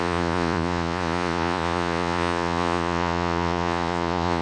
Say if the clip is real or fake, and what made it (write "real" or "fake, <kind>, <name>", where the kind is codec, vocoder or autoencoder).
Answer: fake, vocoder, Vocos